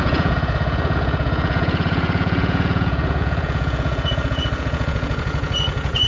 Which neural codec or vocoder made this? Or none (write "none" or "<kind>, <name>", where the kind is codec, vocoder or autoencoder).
vocoder, Vocos